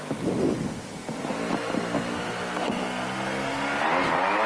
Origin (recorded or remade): recorded